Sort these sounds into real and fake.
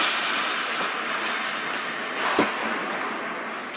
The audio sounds real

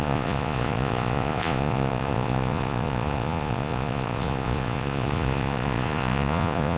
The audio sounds fake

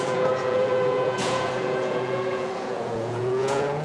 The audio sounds fake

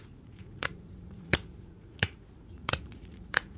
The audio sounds fake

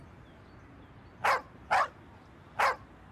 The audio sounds real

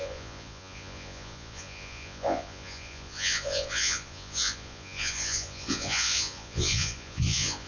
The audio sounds fake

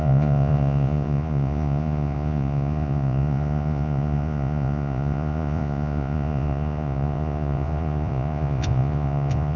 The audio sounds fake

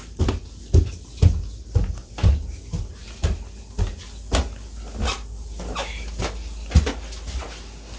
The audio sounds real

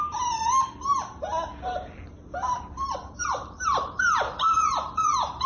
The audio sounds real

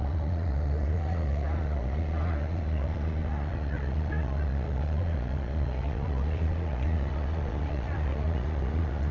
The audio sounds fake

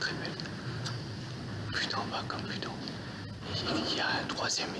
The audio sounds real